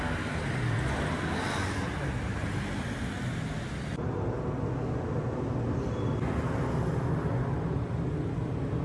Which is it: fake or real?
real